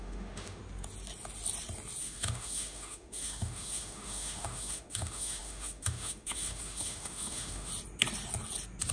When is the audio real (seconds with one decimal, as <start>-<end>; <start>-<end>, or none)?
0.6-2.0; 7.7-8.9